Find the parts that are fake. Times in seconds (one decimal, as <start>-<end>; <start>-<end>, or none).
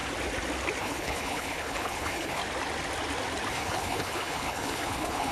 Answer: 0.8-2.4; 3.5-5.3